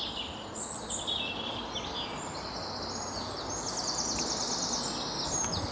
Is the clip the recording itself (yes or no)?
yes